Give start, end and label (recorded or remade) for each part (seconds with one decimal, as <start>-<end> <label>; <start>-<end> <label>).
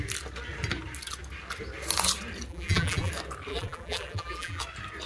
0.0-2.5 recorded; 2.5-3.1 remade; 3.1-3.5 recorded; 3.5-4.6 remade; 4.6-5.1 recorded